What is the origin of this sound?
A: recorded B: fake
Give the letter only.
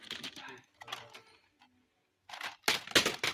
A